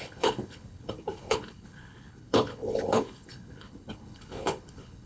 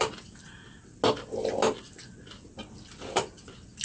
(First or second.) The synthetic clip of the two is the first